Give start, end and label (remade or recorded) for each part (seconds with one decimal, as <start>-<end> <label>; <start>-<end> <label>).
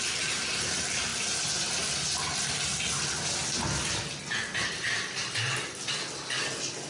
0.0-1.1 remade; 1.1-2.2 recorded; 2.2-2.7 remade; 2.7-6.9 recorded